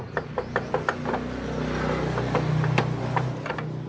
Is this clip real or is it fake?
real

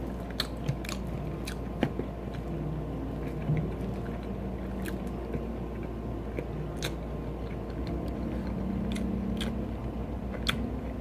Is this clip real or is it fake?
real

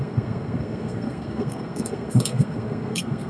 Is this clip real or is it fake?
fake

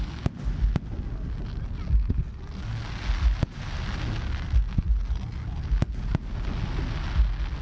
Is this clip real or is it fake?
real